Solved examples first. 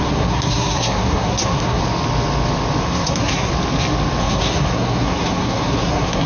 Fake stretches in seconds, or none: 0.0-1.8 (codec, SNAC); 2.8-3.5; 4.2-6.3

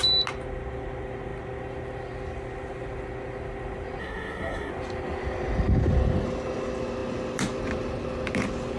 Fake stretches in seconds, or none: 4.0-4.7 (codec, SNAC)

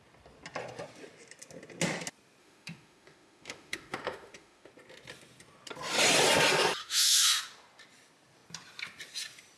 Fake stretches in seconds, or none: 2.4-4.7 (autoencoder, DAC-VAE); 6.8-7.4

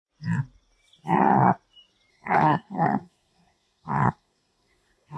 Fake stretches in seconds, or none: 2.1-5.2 (codec, SNAC)